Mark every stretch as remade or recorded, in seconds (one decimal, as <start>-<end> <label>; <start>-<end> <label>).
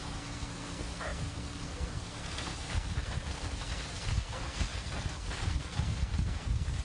0.0-6.8 remade